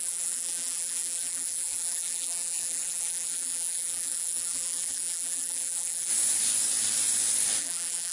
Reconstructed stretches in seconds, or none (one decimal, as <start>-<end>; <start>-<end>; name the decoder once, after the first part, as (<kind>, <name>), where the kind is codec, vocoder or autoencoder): 0.0-6.1 (vocoder, BigVGAN v2); 7.6-8.1